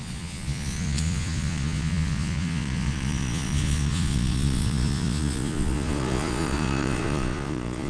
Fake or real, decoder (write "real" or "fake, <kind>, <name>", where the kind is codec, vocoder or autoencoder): fake, vocoder, Vocos